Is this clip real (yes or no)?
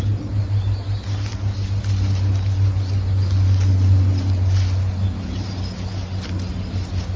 yes